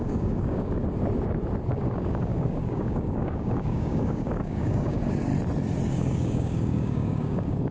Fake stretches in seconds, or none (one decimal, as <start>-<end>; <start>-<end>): 0.0-0.8; 1.7-5.3; 5.9-7.7